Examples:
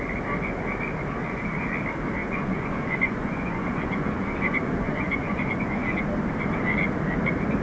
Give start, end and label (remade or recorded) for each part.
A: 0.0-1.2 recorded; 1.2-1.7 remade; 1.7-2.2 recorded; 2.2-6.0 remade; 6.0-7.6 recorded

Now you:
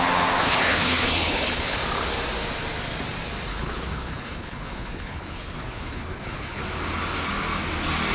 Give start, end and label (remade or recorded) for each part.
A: 0.0-0.4 recorded; 0.4-1.8 remade; 1.8-3.5 recorded; 3.5-6.6 remade; 6.6-8.1 recorded

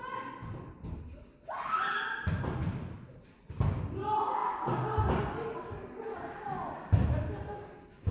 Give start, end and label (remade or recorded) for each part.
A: 0.0-8.1 recorded

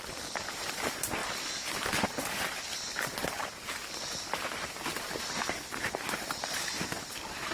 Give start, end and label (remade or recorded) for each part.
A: 0.0-7.5 recorded